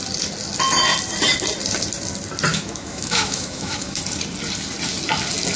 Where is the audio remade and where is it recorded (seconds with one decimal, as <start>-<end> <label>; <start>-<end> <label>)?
0.0-2.5 recorded; 2.5-4.0 remade; 4.0-5.6 recorded